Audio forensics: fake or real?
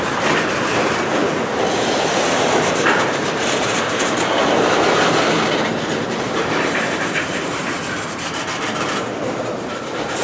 fake